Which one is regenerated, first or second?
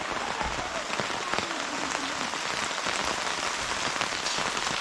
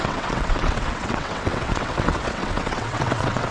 second